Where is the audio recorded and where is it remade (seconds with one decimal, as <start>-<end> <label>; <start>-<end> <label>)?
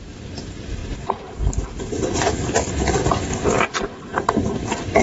0.0-0.8 recorded; 0.8-2.7 remade; 2.7-4.1 recorded; 4.1-5.0 remade